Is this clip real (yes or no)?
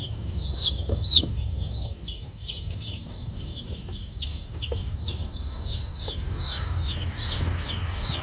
no